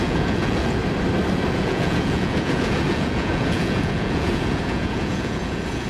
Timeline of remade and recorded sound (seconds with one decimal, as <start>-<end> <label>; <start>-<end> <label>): 0.0-0.8 remade; 0.8-1.5 recorded; 1.5-5.9 remade